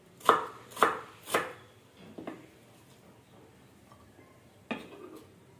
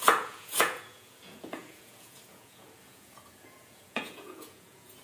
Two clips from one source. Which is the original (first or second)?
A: first